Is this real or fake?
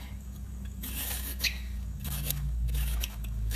fake